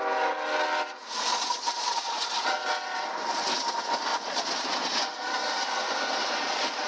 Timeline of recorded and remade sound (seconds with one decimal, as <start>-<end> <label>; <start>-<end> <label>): 0.0-1.3 recorded; 1.3-2.6 remade; 2.6-4.1 recorded; 4.1-5.4 remade; 5.4-6.2 recorded; 6.2-6.9 remade